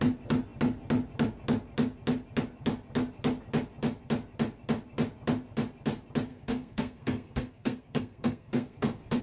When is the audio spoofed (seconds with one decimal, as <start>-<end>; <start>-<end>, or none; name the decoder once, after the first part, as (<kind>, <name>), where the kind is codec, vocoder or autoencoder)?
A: 6.3-9.2 (codec, SNAC)